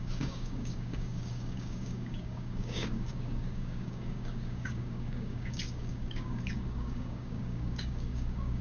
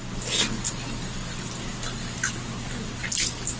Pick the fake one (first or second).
first